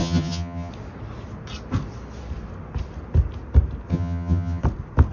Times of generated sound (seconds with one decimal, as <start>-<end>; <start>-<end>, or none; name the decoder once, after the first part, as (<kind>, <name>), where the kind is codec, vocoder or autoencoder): 0.0-0.7 (vocoder, HiFi-GAN); 3.9-4.6